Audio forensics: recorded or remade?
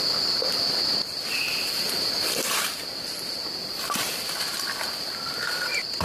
remade